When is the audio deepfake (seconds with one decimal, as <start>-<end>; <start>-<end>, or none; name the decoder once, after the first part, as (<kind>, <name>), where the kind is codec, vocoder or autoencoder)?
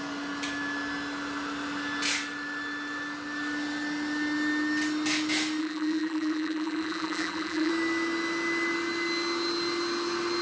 5.6-7.7 (vocoder, BigVGAN v2)